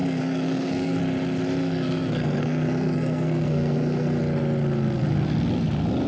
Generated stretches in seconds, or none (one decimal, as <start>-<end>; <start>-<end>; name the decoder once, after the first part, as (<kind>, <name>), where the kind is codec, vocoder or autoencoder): 0.0-1.0 (codec, SNAC); 1.6-4.2